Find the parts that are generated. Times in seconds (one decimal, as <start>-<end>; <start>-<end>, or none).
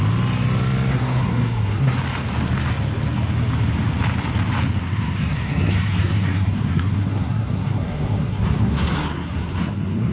0.9-2.0; 4.8-10.1